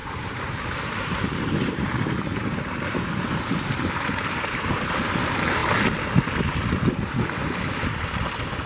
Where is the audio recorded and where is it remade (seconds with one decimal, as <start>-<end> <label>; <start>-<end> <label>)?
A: 0.0-5.1 remade; 5.1-8.7 recorded